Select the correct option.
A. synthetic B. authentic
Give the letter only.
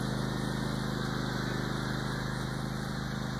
B